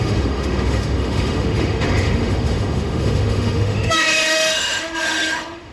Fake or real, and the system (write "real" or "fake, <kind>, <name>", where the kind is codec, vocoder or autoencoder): fake, autoencoder, DAC-VAE